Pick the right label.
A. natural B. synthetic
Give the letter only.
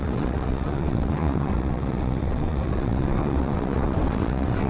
B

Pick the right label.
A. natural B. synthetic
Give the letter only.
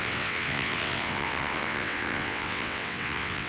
B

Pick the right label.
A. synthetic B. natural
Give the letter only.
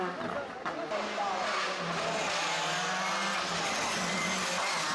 B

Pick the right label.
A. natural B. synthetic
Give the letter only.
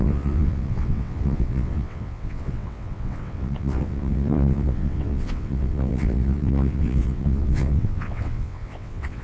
B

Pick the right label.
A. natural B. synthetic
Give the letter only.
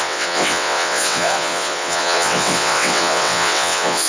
B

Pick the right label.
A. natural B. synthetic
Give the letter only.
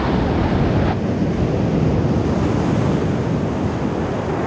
A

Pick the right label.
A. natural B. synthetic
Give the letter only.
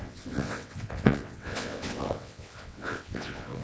B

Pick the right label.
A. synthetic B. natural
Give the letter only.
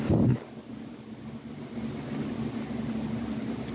B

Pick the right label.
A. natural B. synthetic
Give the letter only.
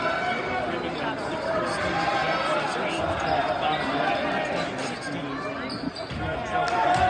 A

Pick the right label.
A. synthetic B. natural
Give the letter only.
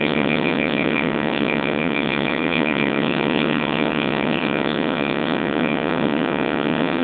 A